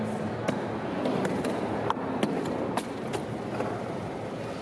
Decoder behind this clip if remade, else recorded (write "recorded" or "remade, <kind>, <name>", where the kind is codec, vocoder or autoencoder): recorded